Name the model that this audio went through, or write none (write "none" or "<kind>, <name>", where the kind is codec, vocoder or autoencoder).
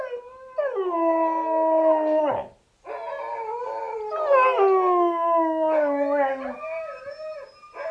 none